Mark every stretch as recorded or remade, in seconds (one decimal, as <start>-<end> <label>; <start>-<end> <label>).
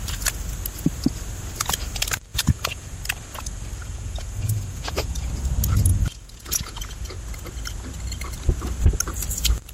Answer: 0.0-2.3 recorded; 2.3-2.9 remade; 2.9-3.8 recorded; 3.8-5.3 remade; 5.3-5.9 recorded; 5.9-7.2 remade; 7.2-9.7 recorded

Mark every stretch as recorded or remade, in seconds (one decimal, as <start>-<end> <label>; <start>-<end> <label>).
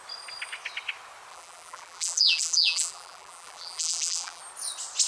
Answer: 0.0-1.3 recorded; 1.3-4.4 remade; 4.4-5.1 recorded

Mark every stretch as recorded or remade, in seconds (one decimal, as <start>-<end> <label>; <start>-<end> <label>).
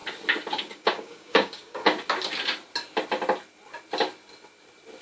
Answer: 0.0-0.6 recorded; 0.6-1.8 remade; 1.8-5.0 recorded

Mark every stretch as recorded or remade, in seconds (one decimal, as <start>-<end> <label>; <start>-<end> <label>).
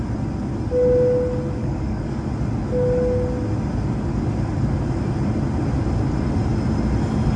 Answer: 0.0-1.6 recorded; 1.6-2.2 remade; 2.2-7.4 recorded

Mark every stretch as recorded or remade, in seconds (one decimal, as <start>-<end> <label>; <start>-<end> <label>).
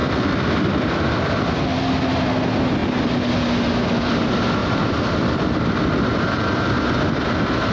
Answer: 0.0-4.6 recorded; 4.6-5.2 remade; 5.2-6.1 recorded; 6.1-7.7 remade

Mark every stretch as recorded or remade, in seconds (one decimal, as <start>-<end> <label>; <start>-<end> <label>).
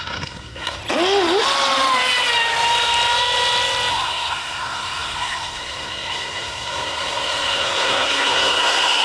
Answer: 0.0-0.8 remade; 0.8-3.9 recorded; 3.9-9.0 remade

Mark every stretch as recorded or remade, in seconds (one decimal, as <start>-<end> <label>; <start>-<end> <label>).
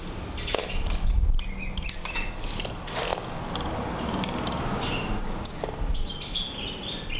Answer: 0.0-7.2 recorded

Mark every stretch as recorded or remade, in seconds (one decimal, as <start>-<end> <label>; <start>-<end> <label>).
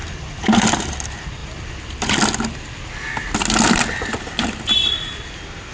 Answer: 0.0-5.7 recorded